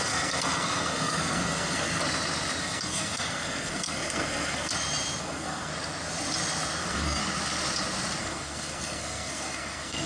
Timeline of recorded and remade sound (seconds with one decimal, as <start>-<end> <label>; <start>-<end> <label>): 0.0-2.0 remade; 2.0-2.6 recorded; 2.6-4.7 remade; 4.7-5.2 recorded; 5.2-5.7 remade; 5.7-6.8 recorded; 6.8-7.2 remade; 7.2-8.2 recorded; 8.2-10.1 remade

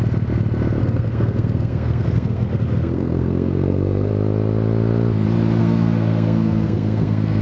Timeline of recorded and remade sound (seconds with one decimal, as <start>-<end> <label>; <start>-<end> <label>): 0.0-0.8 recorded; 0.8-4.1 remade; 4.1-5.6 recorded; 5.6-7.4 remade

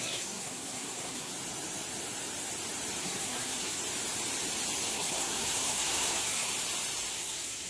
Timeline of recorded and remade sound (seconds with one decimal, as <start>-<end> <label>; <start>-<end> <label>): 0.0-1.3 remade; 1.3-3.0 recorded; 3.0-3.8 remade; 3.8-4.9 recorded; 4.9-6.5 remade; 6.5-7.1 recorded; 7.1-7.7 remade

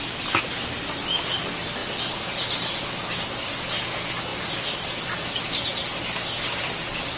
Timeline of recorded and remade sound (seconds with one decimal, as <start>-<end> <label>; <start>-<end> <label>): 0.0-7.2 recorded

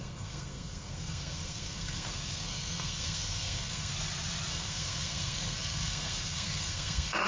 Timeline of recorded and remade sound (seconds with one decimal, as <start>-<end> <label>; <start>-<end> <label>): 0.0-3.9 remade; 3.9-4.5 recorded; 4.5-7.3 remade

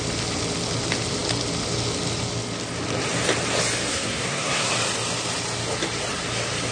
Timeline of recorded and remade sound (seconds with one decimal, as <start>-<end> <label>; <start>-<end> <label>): 0.0-3.9 recorded; 3.9-4.7 remade; 4.7-6.7 recorded

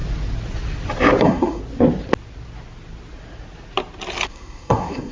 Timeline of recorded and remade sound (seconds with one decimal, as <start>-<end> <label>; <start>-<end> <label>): 0.0-1.2 recorded; 1.2-1.6 remade; 1.6-4.3 recorded; 4.3-5.1 remade